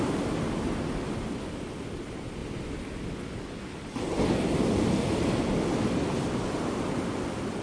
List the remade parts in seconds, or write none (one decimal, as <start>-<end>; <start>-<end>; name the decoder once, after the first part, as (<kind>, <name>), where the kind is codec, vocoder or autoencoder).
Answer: none